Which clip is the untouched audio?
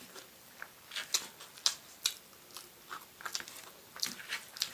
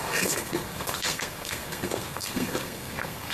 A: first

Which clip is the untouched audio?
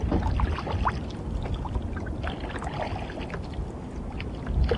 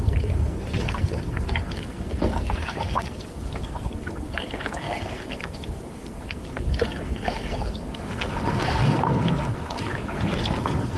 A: first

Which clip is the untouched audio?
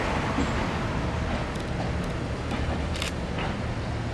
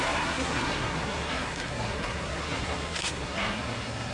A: first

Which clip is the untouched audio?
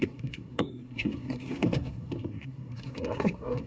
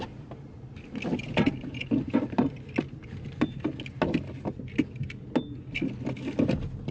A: second